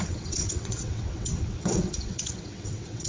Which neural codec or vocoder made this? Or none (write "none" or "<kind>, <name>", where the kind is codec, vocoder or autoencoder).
vocoder, WaveNeXt